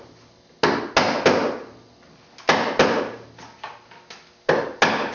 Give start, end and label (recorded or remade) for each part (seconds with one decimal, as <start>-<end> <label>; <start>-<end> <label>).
0.0-5.1 recorded